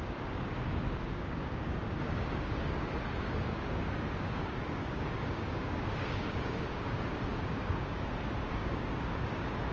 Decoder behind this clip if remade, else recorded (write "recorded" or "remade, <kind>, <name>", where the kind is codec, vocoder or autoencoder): remade, codec, DAC